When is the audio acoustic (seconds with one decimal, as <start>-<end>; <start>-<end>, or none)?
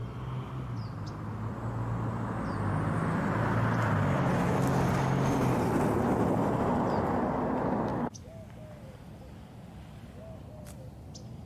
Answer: 0.0-7.9; 8.6-11.5